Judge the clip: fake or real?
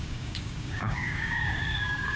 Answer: fake